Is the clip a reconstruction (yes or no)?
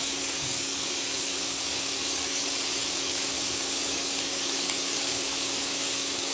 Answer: yes